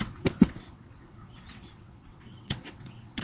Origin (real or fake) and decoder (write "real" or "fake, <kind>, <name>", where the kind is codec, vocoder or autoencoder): fake, vocoder, WaveNeXt